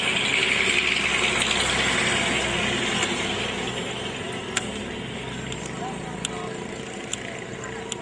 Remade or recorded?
recorded